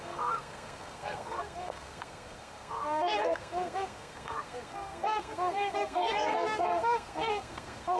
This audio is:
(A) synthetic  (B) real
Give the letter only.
A